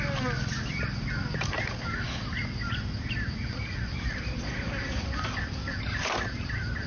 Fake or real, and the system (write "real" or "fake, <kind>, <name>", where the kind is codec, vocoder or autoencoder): real